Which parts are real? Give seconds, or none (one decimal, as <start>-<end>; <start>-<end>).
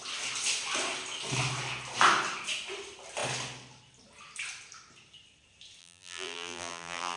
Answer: 0.0-5.8